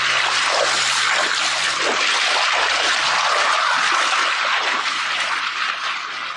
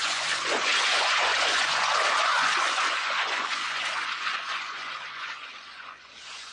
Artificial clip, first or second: second